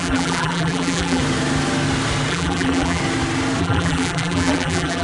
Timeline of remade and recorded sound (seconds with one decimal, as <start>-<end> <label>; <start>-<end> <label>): 0.0-1.2 remade; 1.2-2.3 recorded; 2.3-3.0 remade; 3.0-3.6 recorded; 3.6-5.0 remade